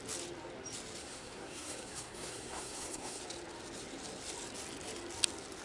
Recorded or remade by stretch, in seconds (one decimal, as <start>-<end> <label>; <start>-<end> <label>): 0.0-1.0 recorded; 1.0-3.2 remade; 3.2-5.6 recorded